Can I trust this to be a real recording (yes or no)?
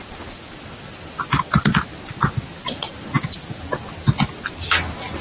yes